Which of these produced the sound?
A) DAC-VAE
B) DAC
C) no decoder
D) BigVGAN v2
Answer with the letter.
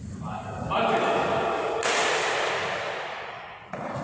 C